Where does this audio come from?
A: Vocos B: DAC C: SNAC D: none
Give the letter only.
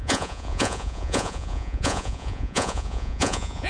A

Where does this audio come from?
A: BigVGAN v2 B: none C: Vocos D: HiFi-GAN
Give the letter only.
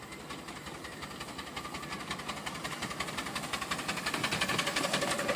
B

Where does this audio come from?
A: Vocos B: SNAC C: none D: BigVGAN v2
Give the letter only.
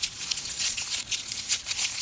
A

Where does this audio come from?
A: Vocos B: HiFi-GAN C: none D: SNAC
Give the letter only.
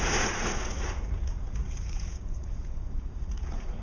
A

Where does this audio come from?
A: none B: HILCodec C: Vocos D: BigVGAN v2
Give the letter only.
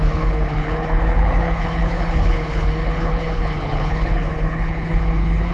B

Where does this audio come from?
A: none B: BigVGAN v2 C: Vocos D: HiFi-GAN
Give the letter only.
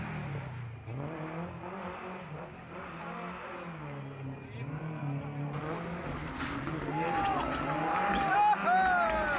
A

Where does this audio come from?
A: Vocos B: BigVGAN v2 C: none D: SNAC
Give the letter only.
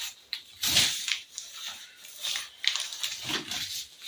B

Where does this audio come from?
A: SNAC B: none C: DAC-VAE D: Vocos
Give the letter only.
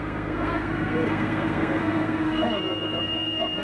A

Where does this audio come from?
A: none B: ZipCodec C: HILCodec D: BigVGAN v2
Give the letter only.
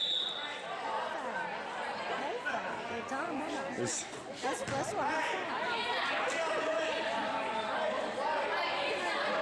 A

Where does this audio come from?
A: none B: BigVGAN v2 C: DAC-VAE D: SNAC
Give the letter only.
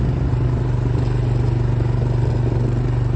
A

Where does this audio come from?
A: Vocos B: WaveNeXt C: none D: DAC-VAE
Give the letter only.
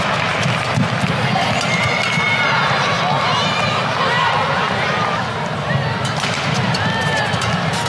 C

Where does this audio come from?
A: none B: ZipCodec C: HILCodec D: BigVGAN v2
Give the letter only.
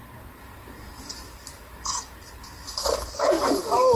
D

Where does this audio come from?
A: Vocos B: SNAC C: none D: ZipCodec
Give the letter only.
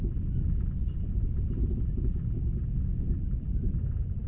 C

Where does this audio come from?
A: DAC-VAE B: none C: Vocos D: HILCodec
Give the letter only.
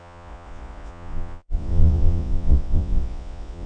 C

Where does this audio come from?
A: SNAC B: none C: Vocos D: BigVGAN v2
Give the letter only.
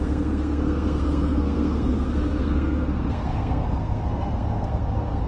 A